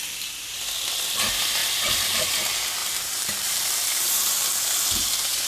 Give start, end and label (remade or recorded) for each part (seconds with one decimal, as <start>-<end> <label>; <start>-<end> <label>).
0.0-1.6 recorded; 1.6-2.2 remade; 2.2-2.8 recorded; 2.8-3.7 remade; 3.7-5.5 recorded